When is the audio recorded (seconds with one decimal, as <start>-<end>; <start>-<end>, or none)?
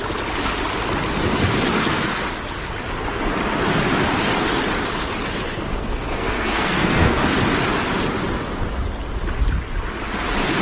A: 0.0-5.5; 7.2-10.6